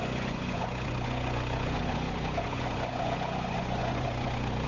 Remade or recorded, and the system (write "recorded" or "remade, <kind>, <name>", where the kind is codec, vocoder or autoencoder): remade, vocoder, Vocos